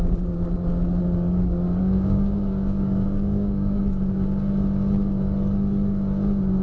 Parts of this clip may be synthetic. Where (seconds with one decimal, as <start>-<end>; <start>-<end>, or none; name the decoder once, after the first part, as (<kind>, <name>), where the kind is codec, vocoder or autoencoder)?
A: 1.8-3.8 (codec, DAC)